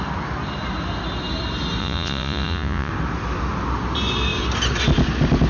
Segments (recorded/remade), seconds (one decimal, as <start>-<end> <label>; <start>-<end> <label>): 0.0-1.8 recorded; 1.8-2.9 remade; 2.9-5.5 recorded